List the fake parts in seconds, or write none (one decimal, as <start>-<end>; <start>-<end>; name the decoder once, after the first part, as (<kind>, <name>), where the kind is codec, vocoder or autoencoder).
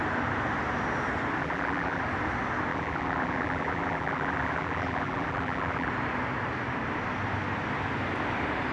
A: 1.4-2.0 (vocoder, BigVGAN v2); 2.7-5.9